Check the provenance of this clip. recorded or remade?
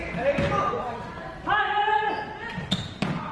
recorded